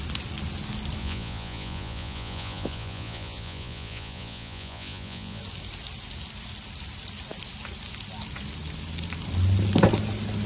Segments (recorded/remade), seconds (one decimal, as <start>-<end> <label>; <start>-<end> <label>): 0.0-1.0 recorded; 1.0-5.4 remade; 5.4-10.5 recorded

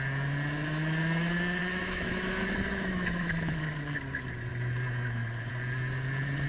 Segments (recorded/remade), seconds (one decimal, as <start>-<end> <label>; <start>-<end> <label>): 0.0-1.6 recorded; 1.6-3.5 remade; 3.5-6.5 recorded

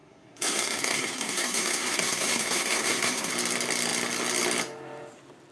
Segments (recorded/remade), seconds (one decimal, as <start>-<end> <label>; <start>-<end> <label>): 0.0-3.3 remade; 3.3-5.5 recorded

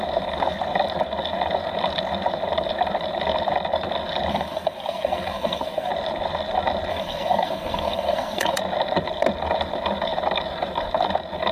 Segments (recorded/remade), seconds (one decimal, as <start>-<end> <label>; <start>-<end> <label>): 0.0-4.3 recorded; 4.3-5.9 remade; 5.9-6.9 recorded; 6.9-8.6 remade; 8.6-11.5 recorded

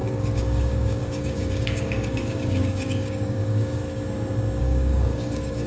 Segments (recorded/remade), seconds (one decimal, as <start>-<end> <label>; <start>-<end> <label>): 0.0-3.8 remade; 3.8-4.6 recorded; 4.6-5.7 remade

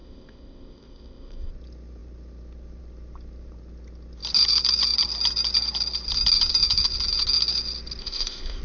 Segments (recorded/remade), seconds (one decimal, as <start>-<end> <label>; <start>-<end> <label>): 0.0-1.5 remade; 1.5-8.0 recorded; 8.0-8.6 remade